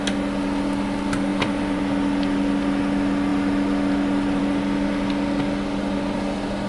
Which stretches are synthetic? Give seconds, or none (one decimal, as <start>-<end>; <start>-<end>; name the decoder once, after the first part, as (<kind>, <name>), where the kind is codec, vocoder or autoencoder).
1.3-1.8 (vocoder, BigVGAN v2)